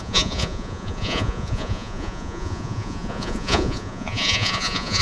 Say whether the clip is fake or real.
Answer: fake